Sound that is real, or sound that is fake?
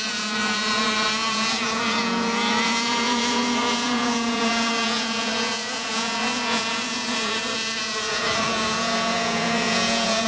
fake